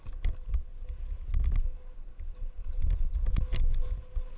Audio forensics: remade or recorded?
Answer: recorded